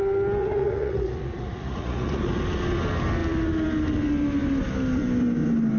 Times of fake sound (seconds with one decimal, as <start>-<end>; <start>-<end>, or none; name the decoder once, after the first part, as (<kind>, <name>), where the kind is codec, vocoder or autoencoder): 0.4-2.4 (vocoder, Vocos)